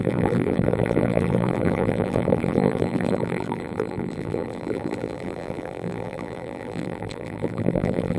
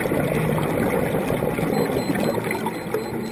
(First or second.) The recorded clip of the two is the second